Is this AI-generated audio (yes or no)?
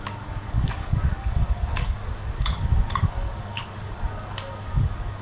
yes